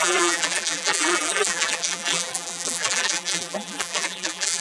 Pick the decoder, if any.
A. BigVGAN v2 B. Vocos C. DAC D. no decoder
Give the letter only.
A